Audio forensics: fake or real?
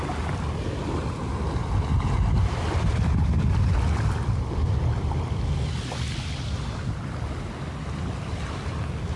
real